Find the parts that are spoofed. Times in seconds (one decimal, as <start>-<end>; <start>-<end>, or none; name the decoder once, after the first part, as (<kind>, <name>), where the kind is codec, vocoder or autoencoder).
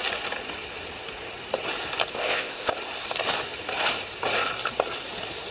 2.1-2.7 (codec, ZipCodec)